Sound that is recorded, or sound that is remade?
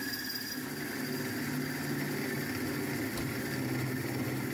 recorded